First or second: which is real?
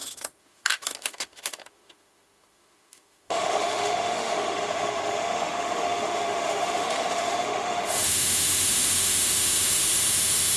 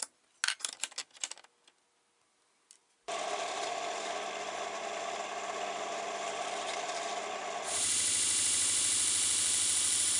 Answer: second